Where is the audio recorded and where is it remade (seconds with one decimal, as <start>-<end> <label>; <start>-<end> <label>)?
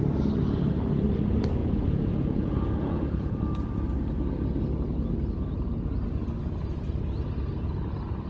0.0-1.6 recorded; 1.6-3.4 remade; 3.4-8.3 recorded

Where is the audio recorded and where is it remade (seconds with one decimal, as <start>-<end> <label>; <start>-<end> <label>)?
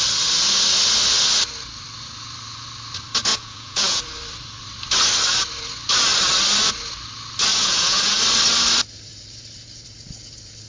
0.0-3.3 recorded; 3.3-4.0 remade; 4.0-7.5 recorded; 7.5-8.2 remade; 8.2-10.7 recorded